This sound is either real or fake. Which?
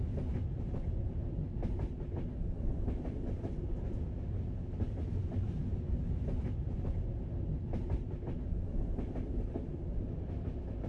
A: real